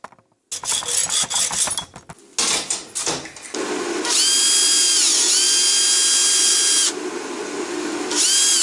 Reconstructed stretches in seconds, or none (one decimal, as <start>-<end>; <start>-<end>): none